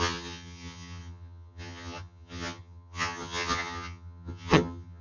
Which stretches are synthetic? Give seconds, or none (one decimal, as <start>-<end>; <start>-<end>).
0.0-5.0